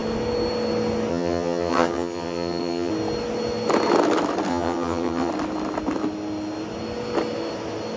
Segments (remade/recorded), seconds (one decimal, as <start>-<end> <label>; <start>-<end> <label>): 0.0-1.1 recorded; 1.1-2.9 remade; 2.9-4.5 recorded; 4.5-5.3 remade; 5.3-8.0 recorded